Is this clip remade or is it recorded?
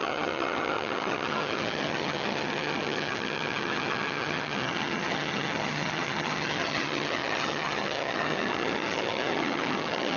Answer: remade